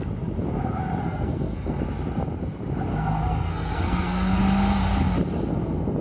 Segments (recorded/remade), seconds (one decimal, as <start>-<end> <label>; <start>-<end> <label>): 0.0-1.0 recorded; 1.0-1.8 remade; 1.8-2.9 recorded; 2.9-4.4 remade; 4.4-6.0 recorded